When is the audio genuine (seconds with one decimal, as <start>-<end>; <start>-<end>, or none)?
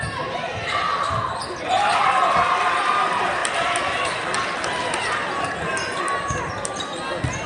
0.0-7.5